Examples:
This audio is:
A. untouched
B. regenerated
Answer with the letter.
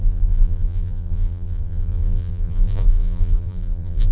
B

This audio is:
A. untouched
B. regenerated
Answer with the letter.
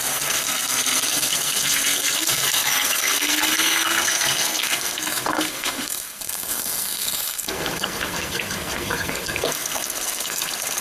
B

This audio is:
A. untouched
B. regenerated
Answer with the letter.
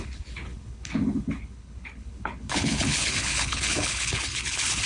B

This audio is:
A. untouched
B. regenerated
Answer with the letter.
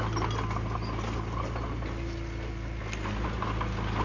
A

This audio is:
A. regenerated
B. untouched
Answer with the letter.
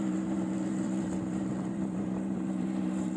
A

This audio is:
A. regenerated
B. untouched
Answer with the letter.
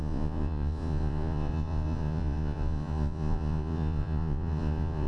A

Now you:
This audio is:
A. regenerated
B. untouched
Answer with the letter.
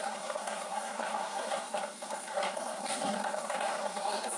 A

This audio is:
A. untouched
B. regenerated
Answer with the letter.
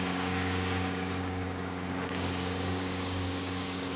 B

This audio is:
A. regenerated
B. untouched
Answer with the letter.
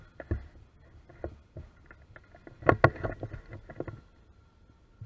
B